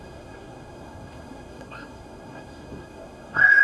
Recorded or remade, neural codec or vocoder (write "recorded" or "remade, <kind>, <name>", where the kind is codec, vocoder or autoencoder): remade, codec, SNAC